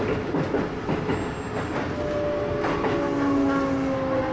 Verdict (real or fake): real